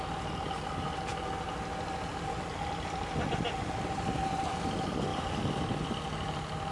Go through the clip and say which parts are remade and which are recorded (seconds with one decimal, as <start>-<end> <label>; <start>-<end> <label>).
0.0-5.1 recorded; 5.1-5.9 remade; 5.9-6.7 recorded

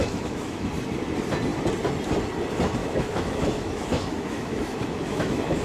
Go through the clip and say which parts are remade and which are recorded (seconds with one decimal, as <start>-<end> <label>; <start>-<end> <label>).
0.0-0.7 remade; 0.7-2.8 recorded; 2.8-5.6 remade

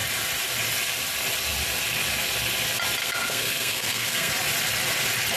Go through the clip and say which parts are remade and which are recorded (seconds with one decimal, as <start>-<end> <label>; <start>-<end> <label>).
0.0-3.0 recorded; 3.0-4.3 remade; 4.3-5.4 recorded